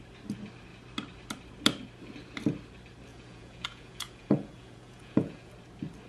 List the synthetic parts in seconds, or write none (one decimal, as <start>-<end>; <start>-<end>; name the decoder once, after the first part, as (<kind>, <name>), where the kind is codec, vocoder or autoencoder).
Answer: 3.1-5.5 (vocoder, Vocos)